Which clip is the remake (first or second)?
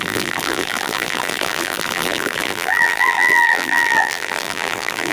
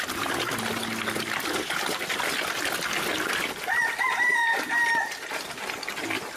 first